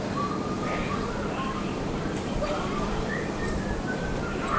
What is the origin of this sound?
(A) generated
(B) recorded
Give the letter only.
A